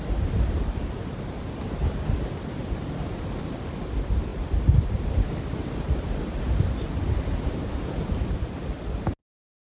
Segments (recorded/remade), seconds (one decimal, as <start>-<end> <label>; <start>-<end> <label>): 0.0-9.7 recorded